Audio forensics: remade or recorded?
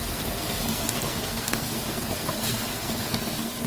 remade